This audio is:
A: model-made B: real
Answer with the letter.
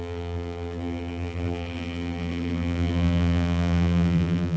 A